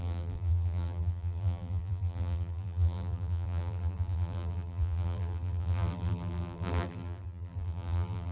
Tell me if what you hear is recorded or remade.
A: remade